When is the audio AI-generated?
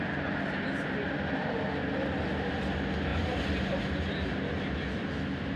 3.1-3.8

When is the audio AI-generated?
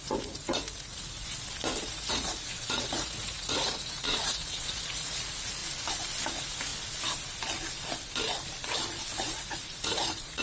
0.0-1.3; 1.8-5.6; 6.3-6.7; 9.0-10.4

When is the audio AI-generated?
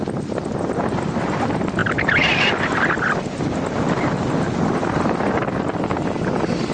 none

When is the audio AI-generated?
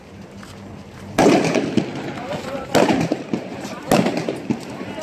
none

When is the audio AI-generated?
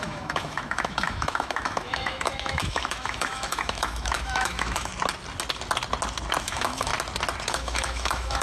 0.0-4.9; 6.4-6.9; 7.5-8.4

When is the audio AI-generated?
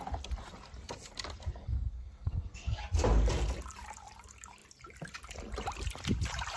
1.7-2.8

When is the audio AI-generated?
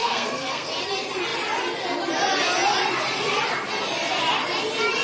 0.0-0.7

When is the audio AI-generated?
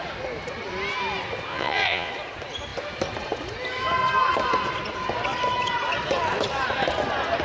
1.5-2.1